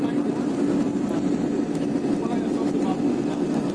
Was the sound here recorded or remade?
recorded